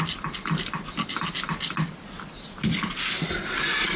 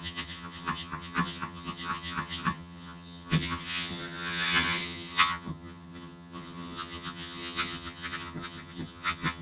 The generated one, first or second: second